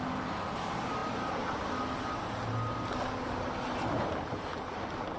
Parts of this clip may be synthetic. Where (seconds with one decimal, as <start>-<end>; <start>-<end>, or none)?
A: none